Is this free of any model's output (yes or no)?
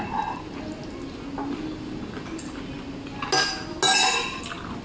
yes